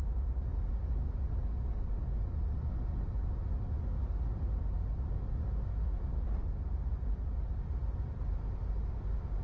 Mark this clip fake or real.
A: real